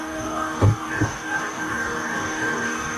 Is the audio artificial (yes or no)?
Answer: yes